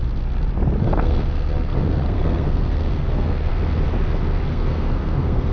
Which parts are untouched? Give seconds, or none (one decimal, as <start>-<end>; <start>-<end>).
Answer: 0.0-0.8; 3.5-4.5